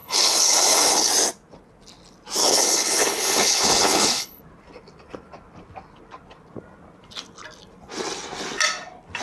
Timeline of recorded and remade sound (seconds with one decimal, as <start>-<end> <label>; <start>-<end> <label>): 0.0-1.1 remade; 1.1-2.4 recorded; 2.4-4.4 remade; 4.4-9.2 recorded